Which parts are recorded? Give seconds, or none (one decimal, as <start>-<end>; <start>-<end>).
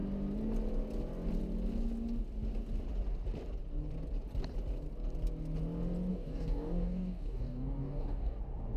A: 0.0-6.1; 8.4-8.8